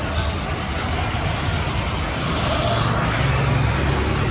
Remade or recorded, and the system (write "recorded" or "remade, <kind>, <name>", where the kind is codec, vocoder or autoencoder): recorded